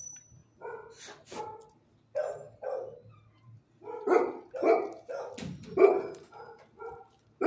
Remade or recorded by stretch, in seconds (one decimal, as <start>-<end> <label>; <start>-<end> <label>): 0.0-7.5 recorded